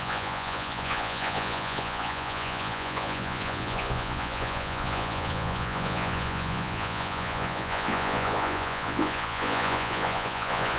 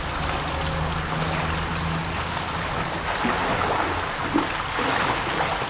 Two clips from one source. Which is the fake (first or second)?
first